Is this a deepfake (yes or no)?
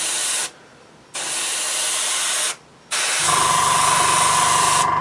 no